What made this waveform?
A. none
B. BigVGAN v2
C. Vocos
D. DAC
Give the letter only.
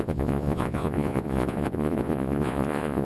C